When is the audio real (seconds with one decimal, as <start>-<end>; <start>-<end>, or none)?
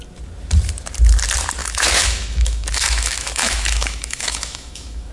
0.0-1.6